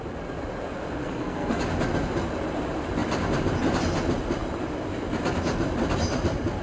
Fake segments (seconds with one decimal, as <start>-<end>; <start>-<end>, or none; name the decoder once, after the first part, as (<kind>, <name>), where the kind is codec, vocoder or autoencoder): 1.0-1.6 (codec, SNAC)